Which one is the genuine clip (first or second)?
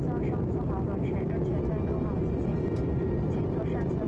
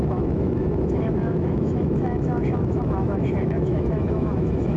first